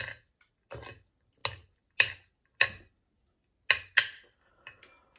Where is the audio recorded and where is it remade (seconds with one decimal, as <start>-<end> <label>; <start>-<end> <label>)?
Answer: 0.0-5.2 recorded